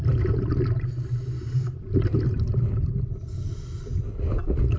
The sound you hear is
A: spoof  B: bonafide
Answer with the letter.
B